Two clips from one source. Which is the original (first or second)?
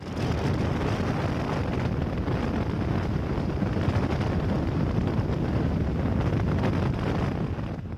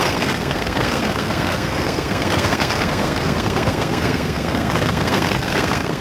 first